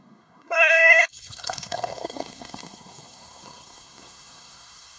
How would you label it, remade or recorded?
remade